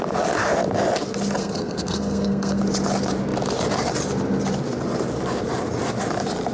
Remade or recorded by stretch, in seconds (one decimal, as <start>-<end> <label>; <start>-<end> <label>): 0.0-1.4 recorded; 1.4-2.6 remade; 2.6-6.5 recorded